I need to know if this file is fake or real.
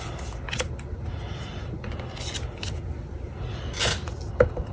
real